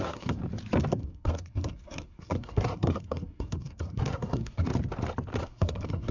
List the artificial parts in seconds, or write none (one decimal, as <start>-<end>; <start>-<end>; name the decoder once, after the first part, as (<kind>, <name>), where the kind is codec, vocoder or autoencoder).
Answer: 0.0-0.4 (codec, SNAC); 0.9-4.7; 5.4-6.1